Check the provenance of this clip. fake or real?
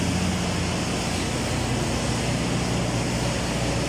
real